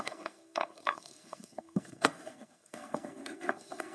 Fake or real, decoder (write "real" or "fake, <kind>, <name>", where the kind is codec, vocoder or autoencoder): fake, codec, SNAC